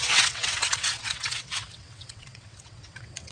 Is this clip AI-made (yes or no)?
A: yes